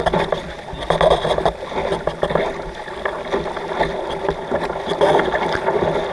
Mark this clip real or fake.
real